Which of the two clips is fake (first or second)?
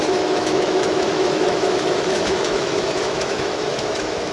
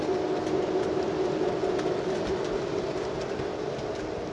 first